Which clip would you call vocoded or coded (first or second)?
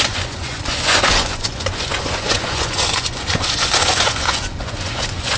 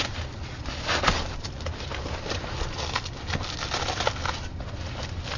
first